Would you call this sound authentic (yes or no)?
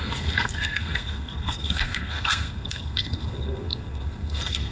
no